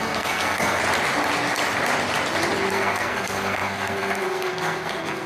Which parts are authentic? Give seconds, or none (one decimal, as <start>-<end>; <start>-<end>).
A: 0.8-2.7